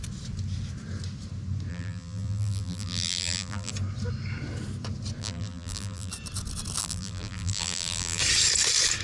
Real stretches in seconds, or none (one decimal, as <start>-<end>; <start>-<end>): 0.0-1.7; 3.7-5.2; 6.1-6.8; 8.2-9.0